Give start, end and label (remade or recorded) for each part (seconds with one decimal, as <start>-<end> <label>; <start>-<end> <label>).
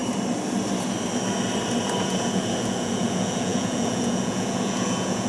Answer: 0.0-2.0 recorded; 2.0-5.3 remade